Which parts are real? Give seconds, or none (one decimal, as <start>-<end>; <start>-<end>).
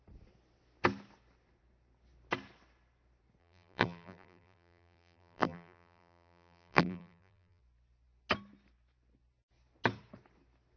0.0-3.4; 7.6-10.8